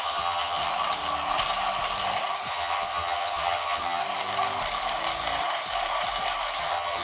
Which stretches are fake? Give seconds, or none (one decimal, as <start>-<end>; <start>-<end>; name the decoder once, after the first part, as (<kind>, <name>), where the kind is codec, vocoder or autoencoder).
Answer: 0.0-0.7 (vocoder, HiFi-GAN); 2.5-4.0; 6.6-7.0